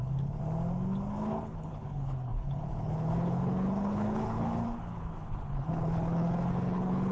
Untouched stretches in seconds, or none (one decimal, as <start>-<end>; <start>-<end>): 0.4-1.1